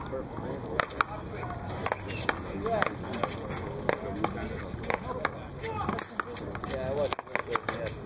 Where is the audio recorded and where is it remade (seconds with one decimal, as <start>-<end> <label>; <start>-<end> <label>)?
0.0-8.1 recorded

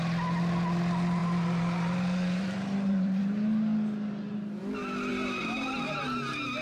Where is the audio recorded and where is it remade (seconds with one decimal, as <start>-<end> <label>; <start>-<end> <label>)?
0.0-1.2 recorded; 1.2-3.2 remade; 3.2-5.1 recorded; 5.1-6.0 remade; 6.0-6.6 recorded

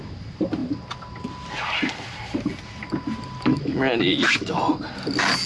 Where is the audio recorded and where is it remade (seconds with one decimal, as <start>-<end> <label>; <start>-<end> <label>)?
0.0-3.5 recorded; 3.5-4.6 remade; 4.6-5.5 recorded

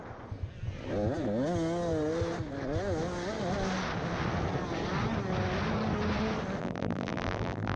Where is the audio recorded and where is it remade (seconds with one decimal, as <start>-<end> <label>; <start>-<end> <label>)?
0.0-6.6 recorded; 6.6-7.8 remade

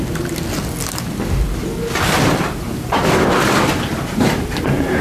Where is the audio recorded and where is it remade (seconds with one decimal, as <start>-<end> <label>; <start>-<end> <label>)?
0.0-3.9 recorded; 3.9-4.6 remade; 4.6-5.0 recorded

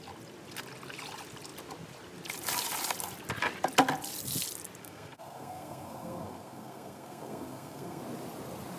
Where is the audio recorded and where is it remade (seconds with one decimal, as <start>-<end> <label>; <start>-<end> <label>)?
0.0-4.8 recorded; 4.8-8.0 remade; 8.0-8.8 recorded